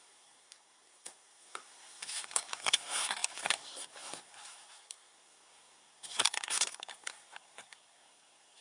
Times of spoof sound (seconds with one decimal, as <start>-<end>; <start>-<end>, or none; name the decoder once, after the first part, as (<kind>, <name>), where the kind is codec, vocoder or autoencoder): 0.0-8.6 (codec, SNAC)